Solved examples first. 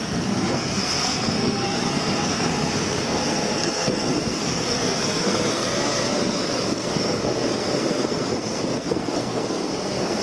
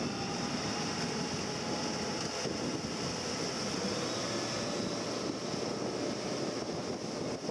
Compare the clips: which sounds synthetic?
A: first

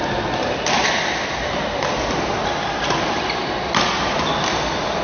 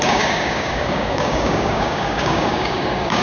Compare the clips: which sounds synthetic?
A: second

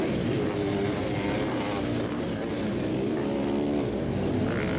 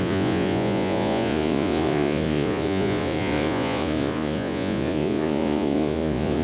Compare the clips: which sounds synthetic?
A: second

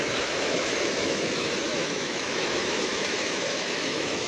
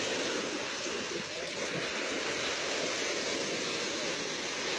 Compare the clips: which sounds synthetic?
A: first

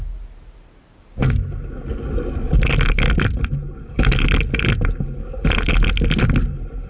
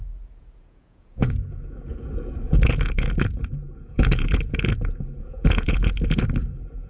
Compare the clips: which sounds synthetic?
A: second